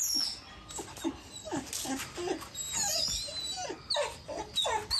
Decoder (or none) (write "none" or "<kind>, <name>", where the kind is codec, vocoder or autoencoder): none